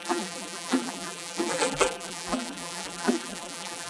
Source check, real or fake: fake